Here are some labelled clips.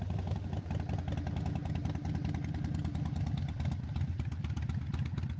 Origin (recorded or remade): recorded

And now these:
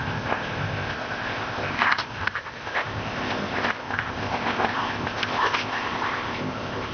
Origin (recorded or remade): remade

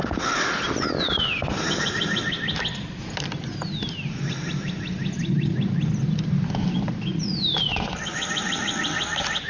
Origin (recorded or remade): recorded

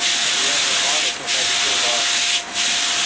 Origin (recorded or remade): recorded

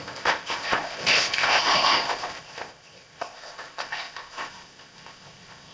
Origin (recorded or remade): remade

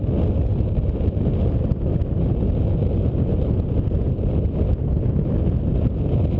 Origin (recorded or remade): recorded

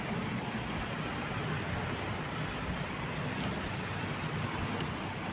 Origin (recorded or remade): recorded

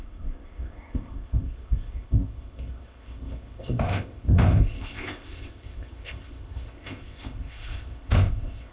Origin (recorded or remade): remade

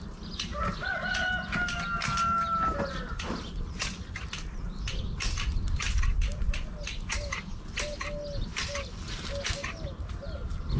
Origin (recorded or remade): recorded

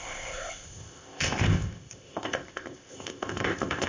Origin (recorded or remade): remade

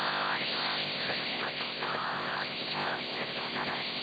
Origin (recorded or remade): remade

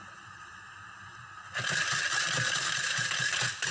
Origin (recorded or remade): recorded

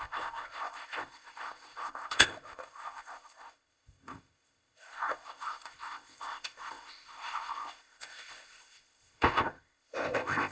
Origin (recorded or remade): remade